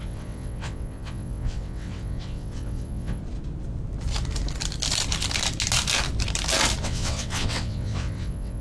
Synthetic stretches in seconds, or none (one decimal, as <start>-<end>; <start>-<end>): 0.0-3.2; 6.8-8.6